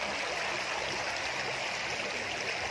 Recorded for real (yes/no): yes